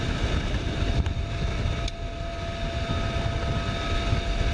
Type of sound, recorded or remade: recorded